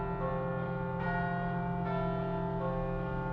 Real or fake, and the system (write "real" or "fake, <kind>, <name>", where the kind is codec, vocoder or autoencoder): real